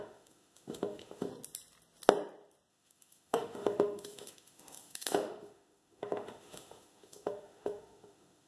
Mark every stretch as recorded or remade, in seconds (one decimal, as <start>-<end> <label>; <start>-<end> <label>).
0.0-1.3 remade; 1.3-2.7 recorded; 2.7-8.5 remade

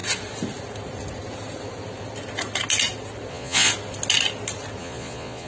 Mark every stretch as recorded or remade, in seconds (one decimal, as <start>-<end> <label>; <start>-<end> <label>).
0.0-3.3 recorded; 3.3-3.7 remade; 3.7-4.8 recorded; 4.8-5.5 remade

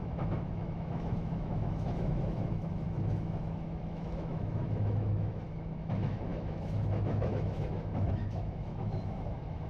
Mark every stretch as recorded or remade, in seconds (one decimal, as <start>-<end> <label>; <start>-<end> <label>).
0.0-9.7 remade

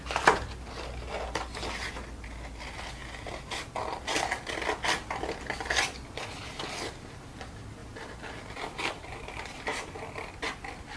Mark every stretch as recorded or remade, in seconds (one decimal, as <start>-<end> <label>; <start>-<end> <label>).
0.0-7.8 recorded; 7.8-9.9 remade; 9.9-11.0 recorded

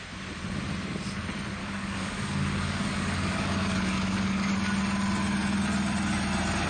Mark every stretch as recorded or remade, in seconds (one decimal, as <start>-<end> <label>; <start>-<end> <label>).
0.0-1.6 recorded; 1.6-4.5 remade; 4.5-6.7 recorded

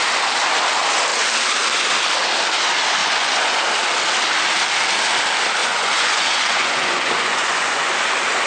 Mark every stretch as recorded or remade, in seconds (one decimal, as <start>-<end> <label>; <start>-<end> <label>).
0.0-3.0 recorded; 3.0-3.6 remade; 3.6-5.6 recorded; 5.6-7.9 remade; 7.9-8.5 recorded